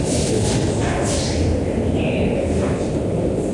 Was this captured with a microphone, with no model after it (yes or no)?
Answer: yes